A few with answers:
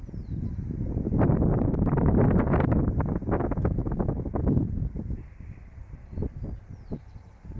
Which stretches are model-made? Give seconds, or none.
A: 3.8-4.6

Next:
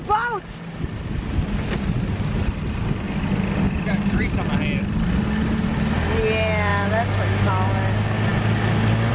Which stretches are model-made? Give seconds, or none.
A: none

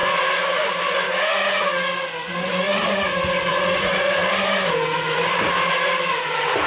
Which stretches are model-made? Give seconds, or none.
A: none